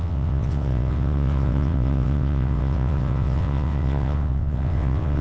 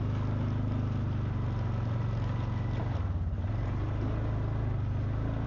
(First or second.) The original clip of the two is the second